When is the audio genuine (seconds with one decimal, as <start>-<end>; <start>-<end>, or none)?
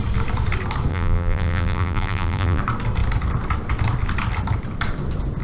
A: 0.0-0.9; 2.6-5.4